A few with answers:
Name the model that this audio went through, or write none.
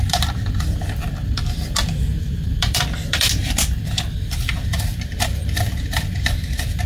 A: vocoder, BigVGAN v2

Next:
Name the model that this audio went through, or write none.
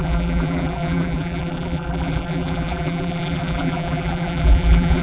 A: vocoder, BigVGAN v2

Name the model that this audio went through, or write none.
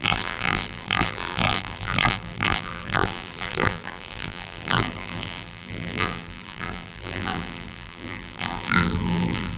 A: vocoder, BigVGAN v2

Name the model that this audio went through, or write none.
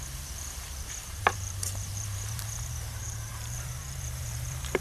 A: vocoder, BigVGAN v2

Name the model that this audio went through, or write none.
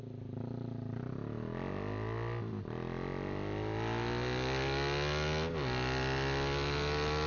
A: none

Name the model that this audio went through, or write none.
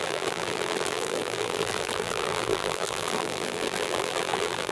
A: vocoder, BigVGAN v2